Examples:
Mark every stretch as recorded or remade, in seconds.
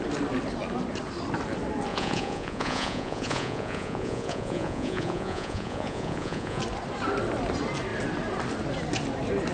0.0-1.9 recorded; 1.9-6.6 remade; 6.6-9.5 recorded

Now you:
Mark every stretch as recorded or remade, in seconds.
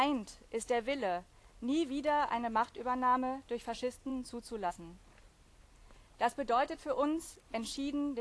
0.0-8.2 recorded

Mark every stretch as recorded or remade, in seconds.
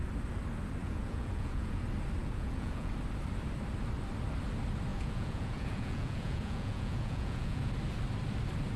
0.0-0.8 recorded; 0.8-1.8 remade; 1.8-2.2 recorded; 2.2-2.9 remade; 2.9-4.9 recorded; 4.9-7.7 remade; 7.7-8.8 recorded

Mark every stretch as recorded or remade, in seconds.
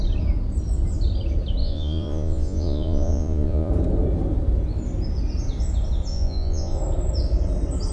0.0-1.6 recorded; 1.6-3.7 remade; 3.7-6.1 recorded; 6.1-6.8 remade; 6.8-7.9 recorded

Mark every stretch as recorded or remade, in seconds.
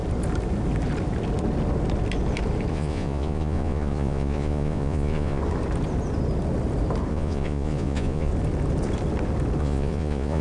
0.0-2.7 recorded; 2.7-5.4 remade; 5.4-7.1 recorded; 7.1-8.3 remade; 8.3-9.6 recorded; 9.6-10.4 remade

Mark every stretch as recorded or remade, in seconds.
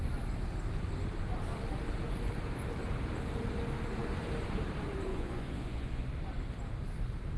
0.0-5.1 recorded; 5.1-6.1 remade; 6.1-7.4 recorded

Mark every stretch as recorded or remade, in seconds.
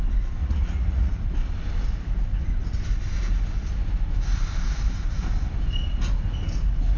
0.0-0.4 recorded; 0.4-1.1 remade; 1.1-7.0 recorded